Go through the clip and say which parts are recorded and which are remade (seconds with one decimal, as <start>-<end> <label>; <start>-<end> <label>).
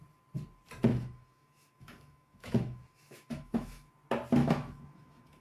0.0-0.9 recorded; 0.9-3.9 remade; 3.9-4.4 recorded; 4.4-5.4 remade